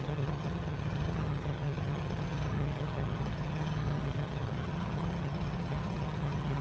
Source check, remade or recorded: remade